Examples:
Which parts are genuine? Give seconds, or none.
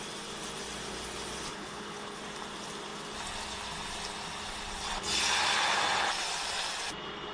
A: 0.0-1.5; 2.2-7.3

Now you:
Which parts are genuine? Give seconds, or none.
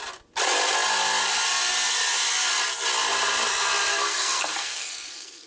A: 0.0-3.9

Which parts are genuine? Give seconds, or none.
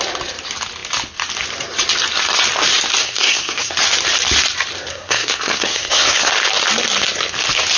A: 0.0-3.0; 3.7-4.9; 6.3-7.8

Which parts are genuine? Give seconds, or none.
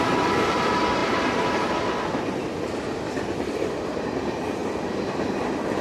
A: none